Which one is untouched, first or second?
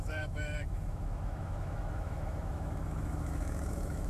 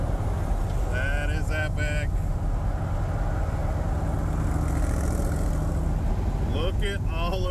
second